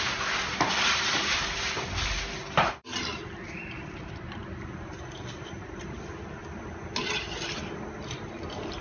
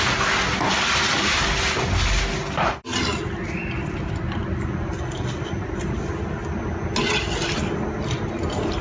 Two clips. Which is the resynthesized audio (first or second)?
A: first